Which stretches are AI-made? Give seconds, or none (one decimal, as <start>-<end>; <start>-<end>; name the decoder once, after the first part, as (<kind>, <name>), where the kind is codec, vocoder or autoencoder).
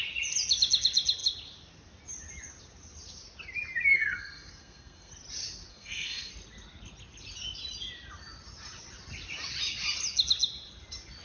3.9-5.1 (codec, SNAC); 5.7-6.3